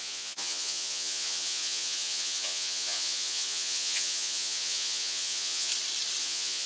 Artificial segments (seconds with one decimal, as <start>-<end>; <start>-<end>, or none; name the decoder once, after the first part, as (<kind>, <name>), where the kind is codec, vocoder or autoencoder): 0.0-5.7 (vocoder, Vocos); 6.2-6.7